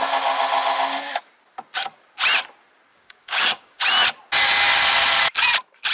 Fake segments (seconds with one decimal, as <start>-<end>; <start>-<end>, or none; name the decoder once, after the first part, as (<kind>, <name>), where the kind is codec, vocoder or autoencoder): 2.9-3.8 (codec, DAC)